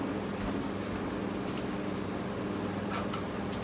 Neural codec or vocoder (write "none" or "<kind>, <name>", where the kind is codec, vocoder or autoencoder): none